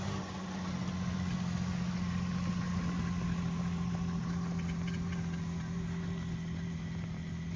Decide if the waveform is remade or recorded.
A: recorded